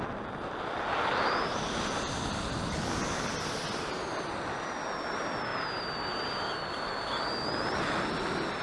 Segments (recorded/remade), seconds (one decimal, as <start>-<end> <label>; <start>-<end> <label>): 0.0-8.6 recorded